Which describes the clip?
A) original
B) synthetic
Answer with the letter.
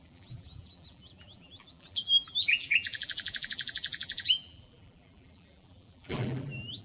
B